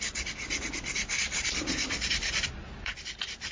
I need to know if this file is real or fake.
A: real